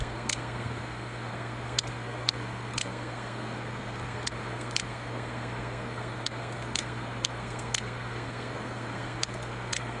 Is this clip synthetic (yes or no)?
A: yes